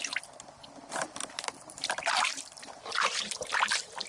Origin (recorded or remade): recorded